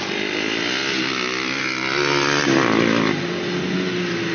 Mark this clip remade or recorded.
recorded